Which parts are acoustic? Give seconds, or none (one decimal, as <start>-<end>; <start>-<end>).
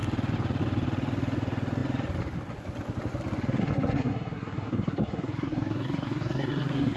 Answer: 0.0-3.6